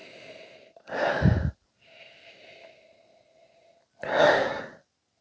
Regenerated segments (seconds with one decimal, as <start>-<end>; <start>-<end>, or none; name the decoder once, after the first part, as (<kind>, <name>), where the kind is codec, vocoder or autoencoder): 4.1-4.6 (codec, SNAC)